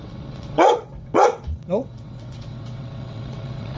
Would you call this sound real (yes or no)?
no